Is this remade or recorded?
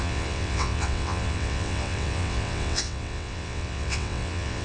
remade